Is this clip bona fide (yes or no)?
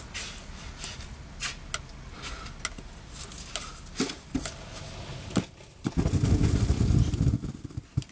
yes